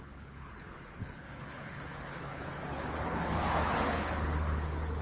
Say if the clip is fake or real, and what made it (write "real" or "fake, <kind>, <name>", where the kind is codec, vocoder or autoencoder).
fake, codec, HILCodec